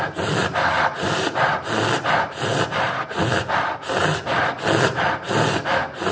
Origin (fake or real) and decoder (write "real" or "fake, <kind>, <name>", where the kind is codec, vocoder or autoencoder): real